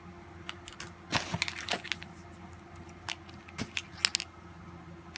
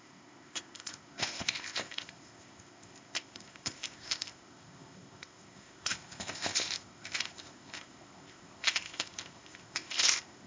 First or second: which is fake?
second